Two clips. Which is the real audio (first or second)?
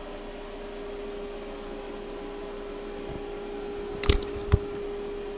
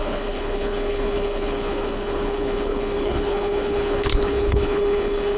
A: first